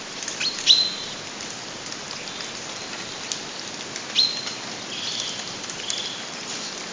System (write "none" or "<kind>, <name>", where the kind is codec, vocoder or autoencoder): none